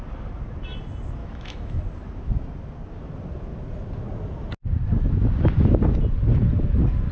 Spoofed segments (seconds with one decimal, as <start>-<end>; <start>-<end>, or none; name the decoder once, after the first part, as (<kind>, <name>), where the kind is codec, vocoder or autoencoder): 1.2-1.8 (autoencoder, DAC-VAE)